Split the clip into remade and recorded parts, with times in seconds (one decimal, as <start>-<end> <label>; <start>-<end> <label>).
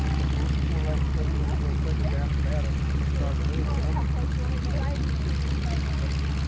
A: 0.0-6.5 recorded